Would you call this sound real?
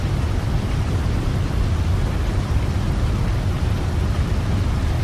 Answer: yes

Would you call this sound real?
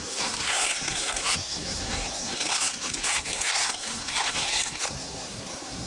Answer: no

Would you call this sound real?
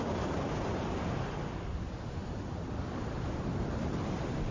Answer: yes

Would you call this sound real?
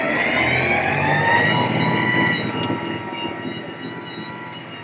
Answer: yes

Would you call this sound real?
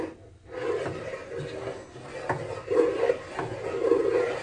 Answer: yes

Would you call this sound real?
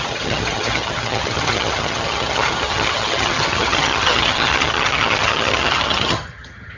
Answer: no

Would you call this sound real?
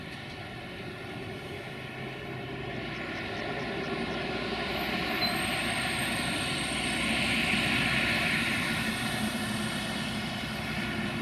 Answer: yes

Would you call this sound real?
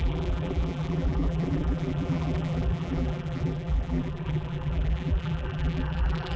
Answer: no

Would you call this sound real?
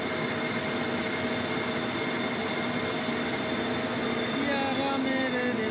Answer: yes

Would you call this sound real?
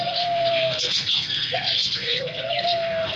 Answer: no